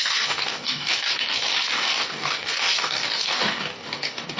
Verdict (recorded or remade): remade